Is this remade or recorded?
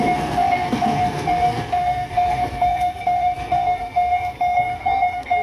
remade